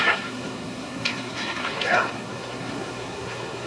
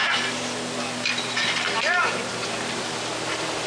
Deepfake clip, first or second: first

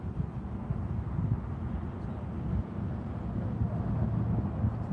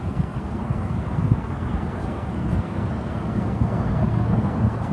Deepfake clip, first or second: second